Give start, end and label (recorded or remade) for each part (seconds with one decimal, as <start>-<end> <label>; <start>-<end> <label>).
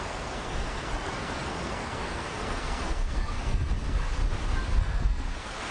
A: 0.0-4.2 remade; 4.2-4.8 recorded; 4.8-5.7 remade